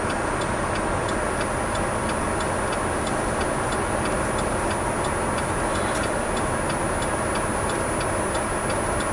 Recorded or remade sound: recorded